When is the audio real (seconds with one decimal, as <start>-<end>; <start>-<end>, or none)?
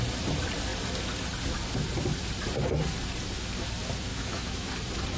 0.0-4.1; 4.7-5.2